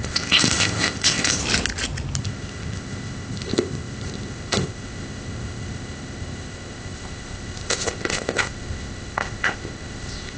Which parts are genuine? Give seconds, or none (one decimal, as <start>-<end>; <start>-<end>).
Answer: 1.4-2.2